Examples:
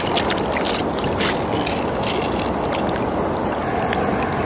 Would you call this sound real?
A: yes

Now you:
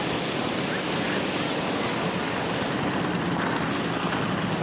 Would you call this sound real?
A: yes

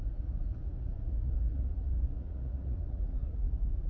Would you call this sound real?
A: no